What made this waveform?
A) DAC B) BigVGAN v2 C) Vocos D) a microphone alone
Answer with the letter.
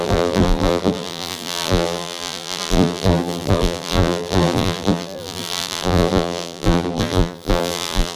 B